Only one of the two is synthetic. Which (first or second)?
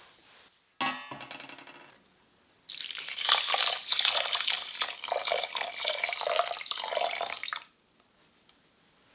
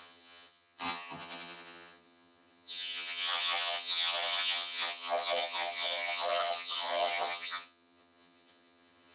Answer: second